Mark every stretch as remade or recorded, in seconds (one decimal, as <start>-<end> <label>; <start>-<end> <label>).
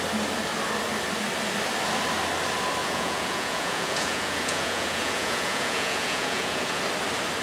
0.0-2.8 recorded; 2.8-6.8 remade; 6.8-7.4 recorded